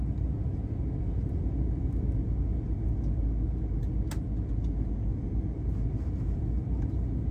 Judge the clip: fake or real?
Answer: real